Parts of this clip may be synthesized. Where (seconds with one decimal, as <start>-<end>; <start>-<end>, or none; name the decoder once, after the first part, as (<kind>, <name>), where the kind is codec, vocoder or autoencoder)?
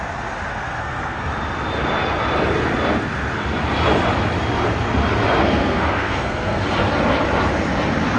0.5-1.3 (codec, SNAC); 5.4-6.6